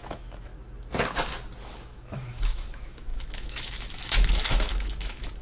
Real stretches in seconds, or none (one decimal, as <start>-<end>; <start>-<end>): 0.5-1.6